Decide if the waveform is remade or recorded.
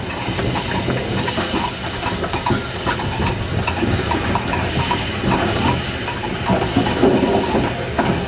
recorded